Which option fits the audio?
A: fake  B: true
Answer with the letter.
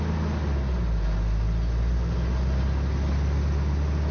B